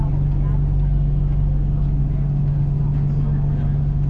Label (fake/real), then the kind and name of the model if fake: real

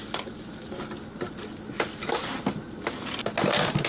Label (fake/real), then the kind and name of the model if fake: real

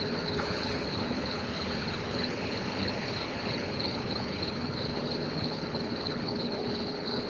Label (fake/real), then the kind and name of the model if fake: fake, codec, HILCodec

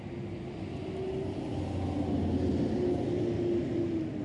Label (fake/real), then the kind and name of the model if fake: real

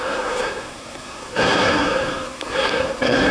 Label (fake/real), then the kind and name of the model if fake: fake, codec, SNAC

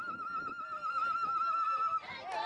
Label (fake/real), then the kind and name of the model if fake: real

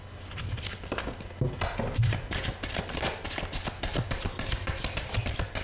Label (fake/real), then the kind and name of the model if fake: real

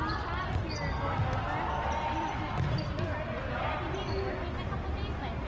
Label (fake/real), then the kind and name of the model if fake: real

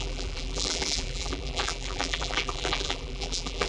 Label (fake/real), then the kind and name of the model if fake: fake, vocoder, BigVGAN v2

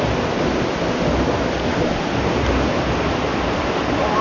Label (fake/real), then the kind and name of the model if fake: real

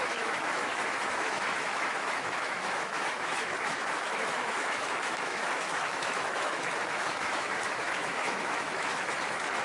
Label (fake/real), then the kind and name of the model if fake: fake, autoencoder, DAC-VAE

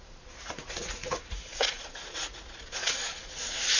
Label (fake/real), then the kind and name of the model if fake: fake, vocoder, Vocos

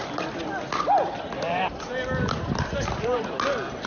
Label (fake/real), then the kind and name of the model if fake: real